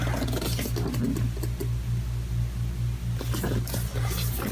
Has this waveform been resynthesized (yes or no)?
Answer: no